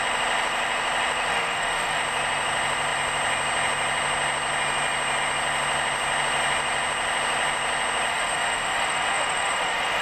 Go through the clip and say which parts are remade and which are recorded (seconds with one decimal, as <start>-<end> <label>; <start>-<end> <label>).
0.0-1.3 recorded; 1.3-2.0 remade; 2.0-8.1 recorded; 8.1-10.0 remade